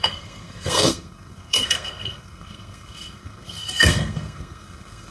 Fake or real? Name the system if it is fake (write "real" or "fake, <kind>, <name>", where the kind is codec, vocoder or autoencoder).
fake, codec, SNAC